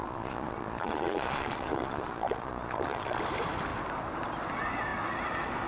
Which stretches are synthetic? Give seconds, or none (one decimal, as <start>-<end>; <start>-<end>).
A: 0.0-3.2